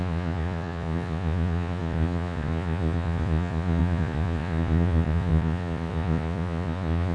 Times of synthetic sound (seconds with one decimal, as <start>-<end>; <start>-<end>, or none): 0.0-7.1